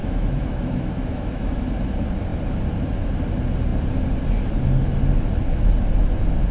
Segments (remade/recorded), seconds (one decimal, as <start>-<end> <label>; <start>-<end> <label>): 0.0-1.8 remade; 1.8-6.5 recorded